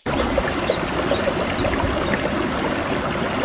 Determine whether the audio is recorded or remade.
recorded